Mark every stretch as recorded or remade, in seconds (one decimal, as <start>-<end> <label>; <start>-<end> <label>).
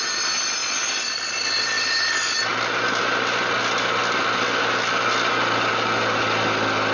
0.0-0.6 recorded; 0.6-2.1 remade; 2.1-6.9 recorded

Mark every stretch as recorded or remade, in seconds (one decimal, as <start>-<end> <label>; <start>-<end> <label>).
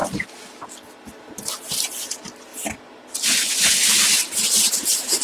0.0-2.5 recorded; 2.5-4.7 remade; 4.7-5.2 recorded